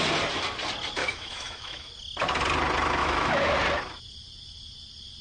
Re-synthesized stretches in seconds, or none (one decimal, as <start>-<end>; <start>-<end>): 1.0-1.9; 3.0-3.5